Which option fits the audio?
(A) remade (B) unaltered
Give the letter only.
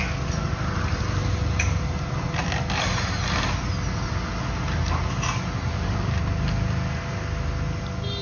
B